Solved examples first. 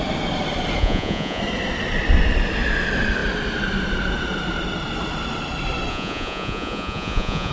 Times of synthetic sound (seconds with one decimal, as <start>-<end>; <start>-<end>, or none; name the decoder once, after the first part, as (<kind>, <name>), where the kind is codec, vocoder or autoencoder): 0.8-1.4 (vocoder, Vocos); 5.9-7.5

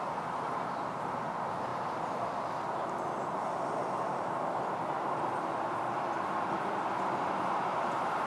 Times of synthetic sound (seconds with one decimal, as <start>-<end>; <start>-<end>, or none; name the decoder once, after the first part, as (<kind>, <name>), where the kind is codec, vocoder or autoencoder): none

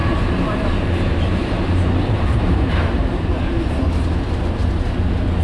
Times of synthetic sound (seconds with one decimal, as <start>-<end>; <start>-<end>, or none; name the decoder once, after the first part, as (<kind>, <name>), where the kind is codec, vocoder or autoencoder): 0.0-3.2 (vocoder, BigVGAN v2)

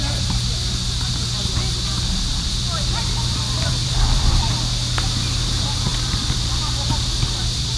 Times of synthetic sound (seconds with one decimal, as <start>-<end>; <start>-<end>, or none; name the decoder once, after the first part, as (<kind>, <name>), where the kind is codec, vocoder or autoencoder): 2.3-4.3 (vocoder, BigVGAN v2); 5.9-7.0

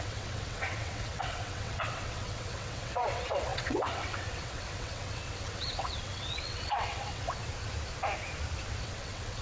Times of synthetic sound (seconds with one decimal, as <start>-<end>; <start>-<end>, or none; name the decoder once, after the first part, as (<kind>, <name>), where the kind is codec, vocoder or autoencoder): 0.0-7.4 (vocoder, WaveNeXt); 8.8-9.4

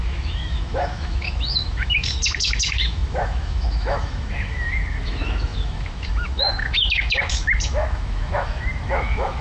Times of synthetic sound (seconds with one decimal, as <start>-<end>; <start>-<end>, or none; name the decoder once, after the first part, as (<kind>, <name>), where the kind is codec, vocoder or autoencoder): 0.0-9.4 (autoencoder, DAC-VAE)

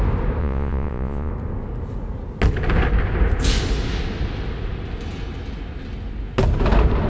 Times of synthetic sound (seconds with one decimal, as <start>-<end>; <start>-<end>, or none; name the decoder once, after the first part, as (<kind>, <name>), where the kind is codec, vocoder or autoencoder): 0.4-1.3 (vocoder, Vocos)

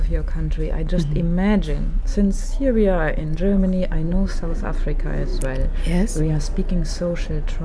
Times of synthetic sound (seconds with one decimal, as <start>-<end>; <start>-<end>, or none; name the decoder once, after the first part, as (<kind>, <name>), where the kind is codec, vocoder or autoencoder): 3.2-4.6 (vocoder, Vocos)